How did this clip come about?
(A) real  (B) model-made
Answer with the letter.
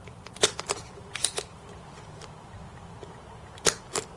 A